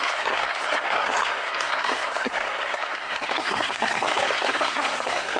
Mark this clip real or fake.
fake